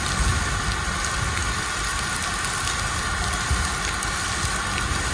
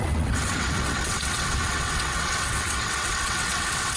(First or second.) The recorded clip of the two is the first